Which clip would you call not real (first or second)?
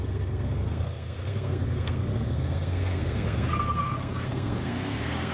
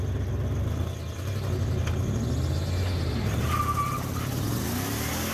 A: first